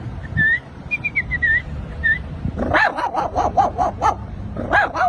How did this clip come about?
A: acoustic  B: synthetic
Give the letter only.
B